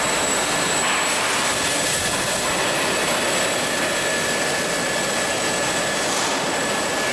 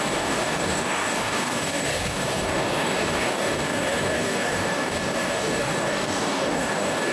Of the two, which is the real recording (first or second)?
first